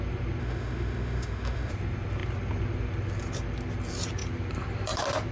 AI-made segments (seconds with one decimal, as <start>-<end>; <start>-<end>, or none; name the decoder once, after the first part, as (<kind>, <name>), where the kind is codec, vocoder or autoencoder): 0.4-1.7 (autoencoder, DAC-VAE)